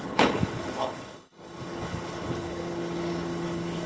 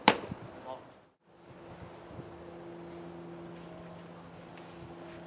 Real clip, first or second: second